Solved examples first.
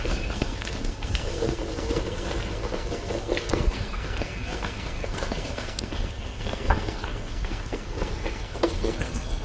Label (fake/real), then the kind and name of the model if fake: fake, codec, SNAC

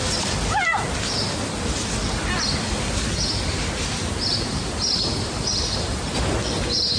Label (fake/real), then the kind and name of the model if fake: real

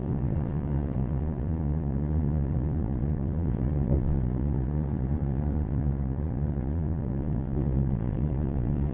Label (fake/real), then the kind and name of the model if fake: fake, vocoder, Vocos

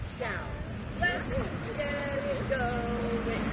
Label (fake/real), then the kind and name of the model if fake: real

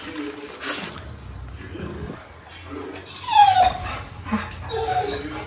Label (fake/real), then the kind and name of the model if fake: real